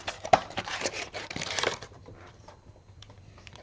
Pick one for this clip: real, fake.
fake